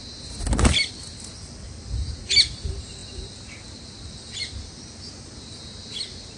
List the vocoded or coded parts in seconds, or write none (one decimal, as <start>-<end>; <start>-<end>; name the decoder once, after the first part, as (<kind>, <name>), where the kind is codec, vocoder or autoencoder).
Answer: none

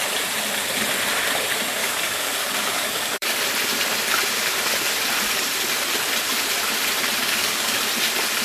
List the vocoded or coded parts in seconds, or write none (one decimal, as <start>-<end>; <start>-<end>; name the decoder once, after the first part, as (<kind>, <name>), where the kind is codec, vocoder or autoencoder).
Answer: 1.8-3.4 (codec, DAC); 7.2-7.8

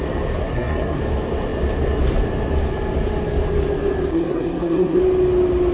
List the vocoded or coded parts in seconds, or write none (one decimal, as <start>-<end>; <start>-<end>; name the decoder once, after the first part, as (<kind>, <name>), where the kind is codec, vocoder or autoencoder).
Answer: 0.4-1.0 (codec, SNAC); 4.1-5.0

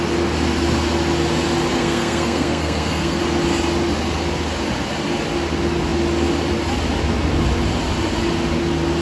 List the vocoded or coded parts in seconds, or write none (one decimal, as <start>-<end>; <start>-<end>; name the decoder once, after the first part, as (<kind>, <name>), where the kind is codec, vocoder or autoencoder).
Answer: 1.7-3.2 (codec, SNAC)

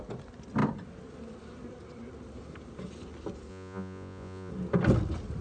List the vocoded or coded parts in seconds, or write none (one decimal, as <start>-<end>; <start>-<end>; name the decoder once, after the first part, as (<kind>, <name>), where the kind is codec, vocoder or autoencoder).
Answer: 3.5-4.5 (vocoder, Vocos)